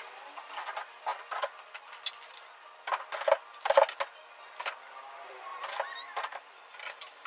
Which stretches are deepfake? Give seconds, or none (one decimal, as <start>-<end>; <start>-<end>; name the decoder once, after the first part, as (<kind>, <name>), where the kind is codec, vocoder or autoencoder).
none

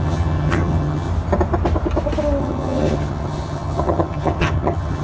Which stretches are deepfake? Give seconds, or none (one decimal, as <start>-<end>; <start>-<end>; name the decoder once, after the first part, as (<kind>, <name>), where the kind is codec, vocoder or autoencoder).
0.0-1.1 (vocoder, HiFi-GAN); 2.4-5.0

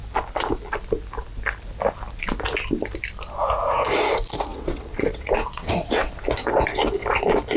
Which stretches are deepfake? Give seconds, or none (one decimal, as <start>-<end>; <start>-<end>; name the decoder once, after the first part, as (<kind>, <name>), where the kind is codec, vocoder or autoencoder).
4.5-5.7 (vocoder, WaveNeXt)

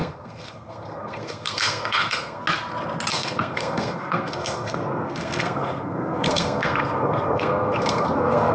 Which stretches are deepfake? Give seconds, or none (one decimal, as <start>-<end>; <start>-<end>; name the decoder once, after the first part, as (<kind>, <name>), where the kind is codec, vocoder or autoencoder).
0.0-2.4 (codec, SNAC); 3.1-8.5